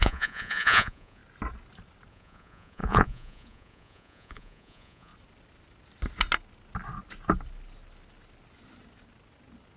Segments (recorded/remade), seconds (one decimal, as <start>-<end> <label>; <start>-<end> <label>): 0.0-1.2 remade; 1.2-2.1 recorded; 2.1-5.1 remade; 5.1-9.8 recorded